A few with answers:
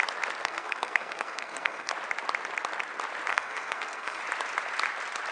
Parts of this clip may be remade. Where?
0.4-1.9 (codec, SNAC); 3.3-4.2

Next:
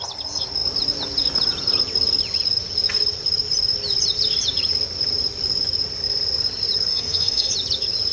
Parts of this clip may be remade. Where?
6.9-7.5 (codec, SNAC)

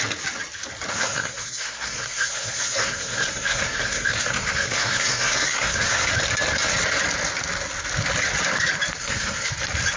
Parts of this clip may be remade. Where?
0.9-6.1 (codec, SNAC); 9.0-9.5

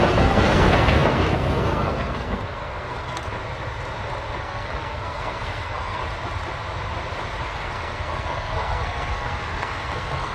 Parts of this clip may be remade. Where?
0.0-3.4 (codec, SNAC); 4.4-6.0; 7.4-10.3

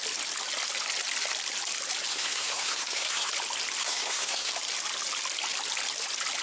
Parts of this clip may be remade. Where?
2.1-3.3 (codec, SNAC); 3.8-4.5

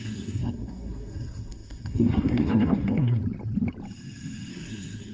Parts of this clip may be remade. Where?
0.0-3.2 (codec, SNAC); 4.5-5.1